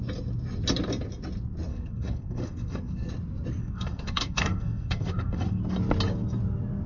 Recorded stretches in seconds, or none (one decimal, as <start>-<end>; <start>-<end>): 0.0-1.7; 3.1-3.6; 5.6-6.9